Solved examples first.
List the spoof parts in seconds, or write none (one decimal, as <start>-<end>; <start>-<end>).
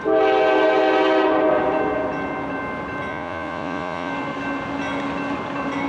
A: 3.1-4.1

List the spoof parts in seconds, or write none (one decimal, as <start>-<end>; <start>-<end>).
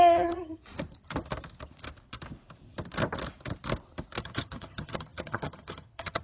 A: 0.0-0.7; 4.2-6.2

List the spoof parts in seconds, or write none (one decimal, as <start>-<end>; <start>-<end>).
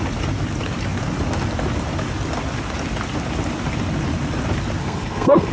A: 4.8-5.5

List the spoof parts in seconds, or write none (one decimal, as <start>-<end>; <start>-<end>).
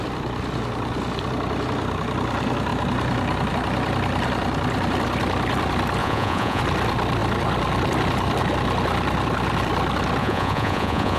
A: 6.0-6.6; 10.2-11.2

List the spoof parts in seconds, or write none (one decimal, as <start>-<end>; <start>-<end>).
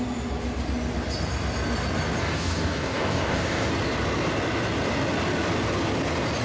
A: 2.2-3.7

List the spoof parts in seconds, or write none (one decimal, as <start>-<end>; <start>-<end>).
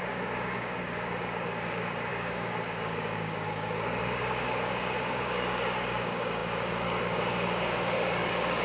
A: 0.0-8.6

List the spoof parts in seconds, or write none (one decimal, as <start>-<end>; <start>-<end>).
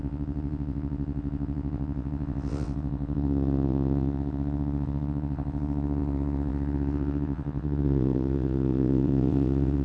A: 0.0-9.8